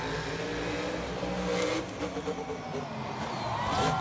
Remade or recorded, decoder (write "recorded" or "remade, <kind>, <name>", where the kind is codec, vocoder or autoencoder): recorded